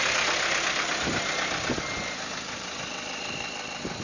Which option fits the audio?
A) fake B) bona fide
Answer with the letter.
B